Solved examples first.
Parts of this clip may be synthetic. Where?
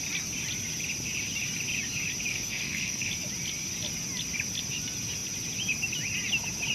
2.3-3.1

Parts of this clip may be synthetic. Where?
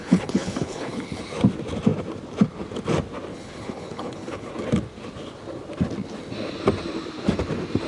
0.0-1.2; 3.3-4.5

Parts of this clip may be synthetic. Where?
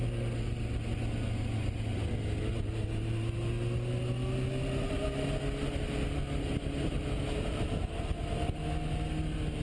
none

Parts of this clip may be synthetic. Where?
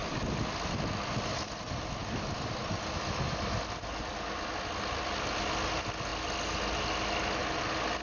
none